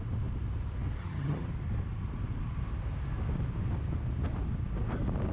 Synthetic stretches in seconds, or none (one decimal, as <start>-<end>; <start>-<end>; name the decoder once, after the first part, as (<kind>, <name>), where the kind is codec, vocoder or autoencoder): 1.0-1.5 (vocoder, HiFi-GAN)